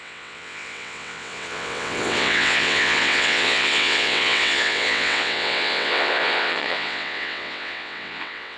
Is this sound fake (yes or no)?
yes